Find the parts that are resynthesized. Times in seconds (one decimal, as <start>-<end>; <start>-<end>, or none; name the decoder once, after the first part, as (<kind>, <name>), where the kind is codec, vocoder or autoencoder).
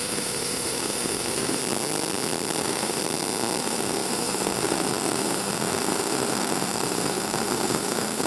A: 0.0-1.6 (autoencoder, DAC-VAE); 2.6-3.0; 3.6-8.3